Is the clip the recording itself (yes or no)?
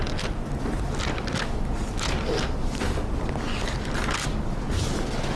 yes